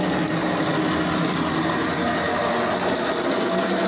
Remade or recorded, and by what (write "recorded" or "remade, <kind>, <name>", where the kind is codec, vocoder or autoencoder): recorded